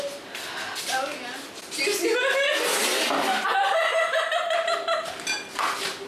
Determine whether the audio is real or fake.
real